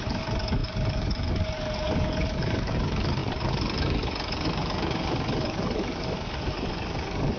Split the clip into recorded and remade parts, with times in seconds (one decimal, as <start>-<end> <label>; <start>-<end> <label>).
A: 0.0-7.4 remade